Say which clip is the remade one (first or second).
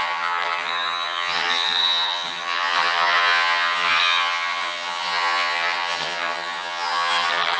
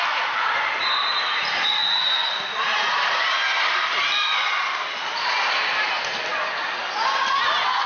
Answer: first